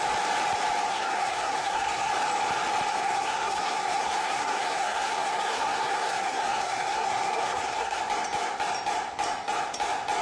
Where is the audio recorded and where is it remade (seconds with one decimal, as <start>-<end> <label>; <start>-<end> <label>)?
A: 0.0-0.9 recorded; 0.9-2.1 remade; 2.1-2.9 recorded; 2.9-8.0 remade; 8.0-10.2 recorded